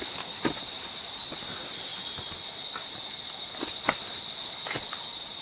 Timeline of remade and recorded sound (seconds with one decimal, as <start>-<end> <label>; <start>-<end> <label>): 0.0-5.4 recorded